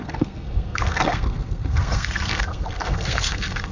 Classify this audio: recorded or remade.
remade